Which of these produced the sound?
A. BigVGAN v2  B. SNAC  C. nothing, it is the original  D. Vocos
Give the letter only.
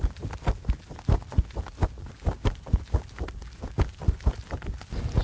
C